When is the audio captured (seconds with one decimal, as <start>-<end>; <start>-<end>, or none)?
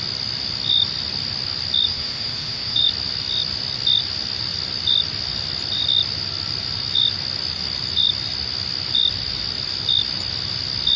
0.0-1.9; 2.9-11.0